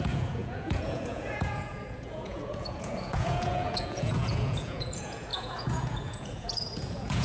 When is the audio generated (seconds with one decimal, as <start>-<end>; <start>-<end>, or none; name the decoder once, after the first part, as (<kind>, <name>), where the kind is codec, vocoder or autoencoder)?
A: 0.0-7.2 (vocoder, Vocos)